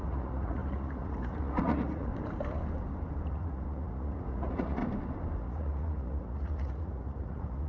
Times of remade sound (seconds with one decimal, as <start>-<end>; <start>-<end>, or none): 0.0-2.1; 3.3-4.8; 5.4-7.7